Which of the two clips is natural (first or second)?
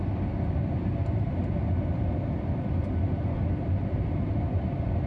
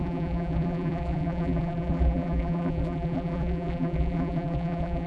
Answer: first